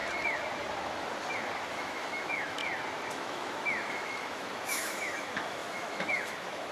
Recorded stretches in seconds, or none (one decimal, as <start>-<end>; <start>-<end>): 0.0-1.7; 2.6-3.1